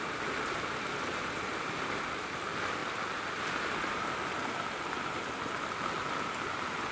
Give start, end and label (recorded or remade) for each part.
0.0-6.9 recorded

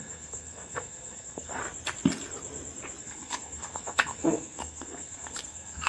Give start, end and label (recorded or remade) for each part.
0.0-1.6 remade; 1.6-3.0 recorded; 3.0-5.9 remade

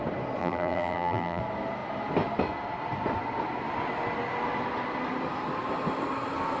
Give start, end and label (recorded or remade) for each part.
0.0-0.4 recorded; 0.4-1.4 remade; 1.4-6.6 recorded

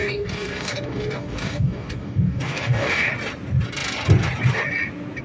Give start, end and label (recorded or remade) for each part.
0.0-3.1 remade; 3.1-5.2 recorded